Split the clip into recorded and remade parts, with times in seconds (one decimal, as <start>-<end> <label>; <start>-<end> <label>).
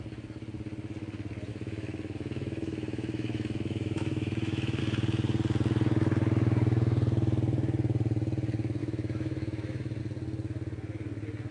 0.0-1.5 recorded; 1.5-4.8 remade; 4.8-8.8 recorded; 8.8-10.0 remade; 10.0-11.5 recorded